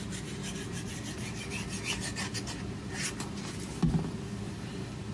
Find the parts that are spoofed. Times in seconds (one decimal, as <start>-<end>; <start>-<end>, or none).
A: none